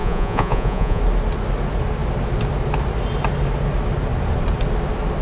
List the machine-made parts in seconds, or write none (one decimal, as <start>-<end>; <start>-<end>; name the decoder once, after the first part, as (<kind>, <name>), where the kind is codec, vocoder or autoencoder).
0.0-1.0 (vocoder, Vocos)